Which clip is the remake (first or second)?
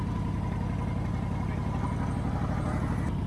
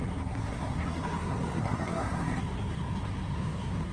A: second